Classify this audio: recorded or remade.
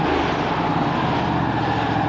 recorded